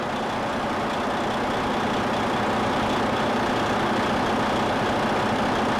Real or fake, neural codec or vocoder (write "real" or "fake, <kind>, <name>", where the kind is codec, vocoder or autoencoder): real